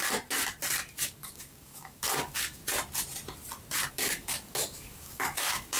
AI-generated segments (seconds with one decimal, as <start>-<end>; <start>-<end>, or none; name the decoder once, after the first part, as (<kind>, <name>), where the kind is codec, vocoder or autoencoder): 0.9-2.6 (codec, DAC); 3.9-5.8